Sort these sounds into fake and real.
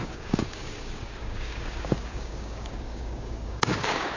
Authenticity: fake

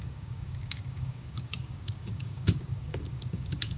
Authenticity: fake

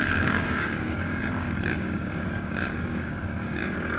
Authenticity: fake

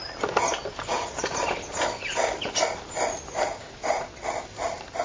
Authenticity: real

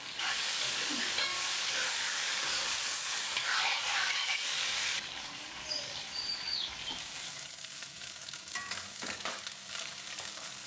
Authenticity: fake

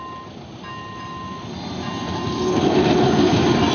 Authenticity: real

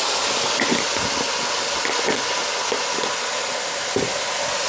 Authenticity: real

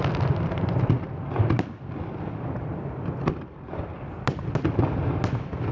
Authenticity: real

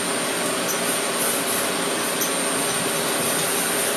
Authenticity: real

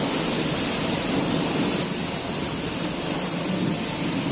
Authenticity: real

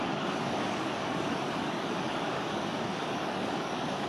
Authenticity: fake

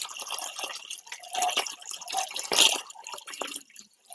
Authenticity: real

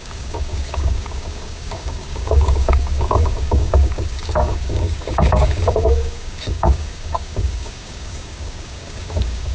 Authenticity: fake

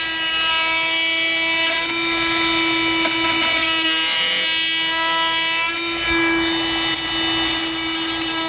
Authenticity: real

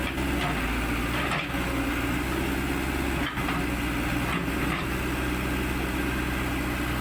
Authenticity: real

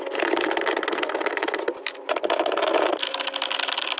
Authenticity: real